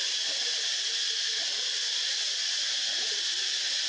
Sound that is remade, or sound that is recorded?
recorded